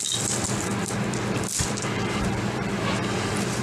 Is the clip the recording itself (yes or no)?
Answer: no